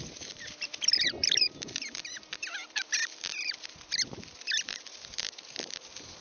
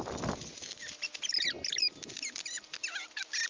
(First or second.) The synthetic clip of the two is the first